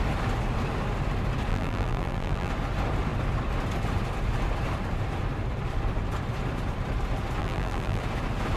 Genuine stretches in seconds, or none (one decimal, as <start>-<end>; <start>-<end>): 0.0-1.5; 2.5-7.4; 8.0-8.6